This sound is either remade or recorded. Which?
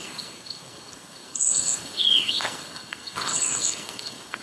remade